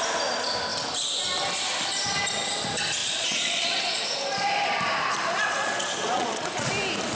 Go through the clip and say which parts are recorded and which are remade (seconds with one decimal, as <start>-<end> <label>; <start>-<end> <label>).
0.0-3.0 recorded; 3.0-4.0 remade; 4.0-5.4 recorded; 5.4-6.7 remade; 6.7-7.2 recorded